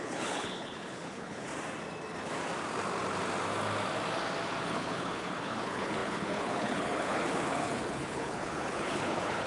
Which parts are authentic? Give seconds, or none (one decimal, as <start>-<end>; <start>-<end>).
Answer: 1.5-4.6